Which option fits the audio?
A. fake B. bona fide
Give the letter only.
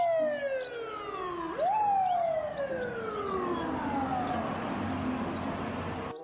B